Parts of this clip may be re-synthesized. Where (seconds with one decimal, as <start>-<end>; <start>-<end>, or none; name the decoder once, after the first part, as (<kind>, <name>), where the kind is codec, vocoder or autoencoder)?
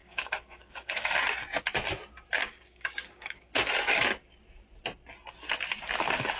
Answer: 0.0-1.1 (codec, DAC); 2.5-3.7